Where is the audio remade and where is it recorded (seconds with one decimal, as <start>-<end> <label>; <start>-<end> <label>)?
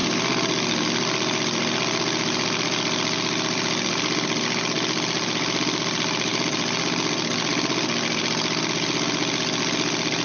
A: 0.0-10.2 recorded